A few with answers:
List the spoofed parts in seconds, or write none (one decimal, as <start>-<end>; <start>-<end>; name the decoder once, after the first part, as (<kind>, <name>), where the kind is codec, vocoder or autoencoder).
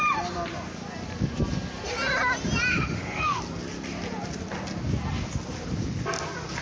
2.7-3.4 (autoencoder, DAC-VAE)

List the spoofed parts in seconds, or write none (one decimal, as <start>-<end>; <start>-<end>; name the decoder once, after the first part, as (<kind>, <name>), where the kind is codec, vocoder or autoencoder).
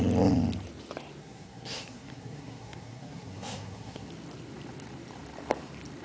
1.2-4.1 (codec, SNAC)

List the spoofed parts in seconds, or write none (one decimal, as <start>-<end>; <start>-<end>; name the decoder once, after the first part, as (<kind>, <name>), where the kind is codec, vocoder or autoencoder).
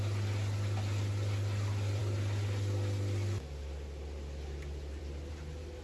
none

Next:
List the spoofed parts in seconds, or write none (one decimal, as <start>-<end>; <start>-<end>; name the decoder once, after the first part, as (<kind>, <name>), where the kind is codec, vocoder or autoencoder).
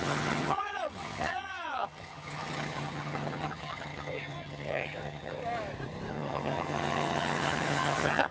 0.0-5.4 (vocoder, HiFi-GAN); 6.1-8.3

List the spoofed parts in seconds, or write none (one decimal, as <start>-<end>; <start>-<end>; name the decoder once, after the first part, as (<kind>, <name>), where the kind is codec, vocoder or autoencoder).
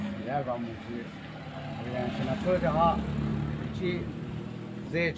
3.3-4.3 (vocoder, BigVGAN v2)